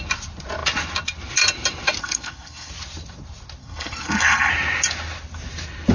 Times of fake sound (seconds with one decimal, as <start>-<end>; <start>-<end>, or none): 2.0-2.7; 3.6-4.5